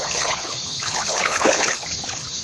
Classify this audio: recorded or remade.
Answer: remade